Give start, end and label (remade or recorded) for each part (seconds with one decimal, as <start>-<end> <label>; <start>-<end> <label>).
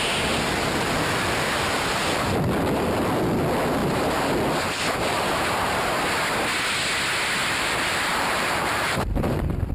0.0-3.8 recorded; 3.8-4.3 remade; 4.3-5.1 recorded; 5.1-5.9 remade; 5.9-7.4 recorded; 7.4-9.7 remade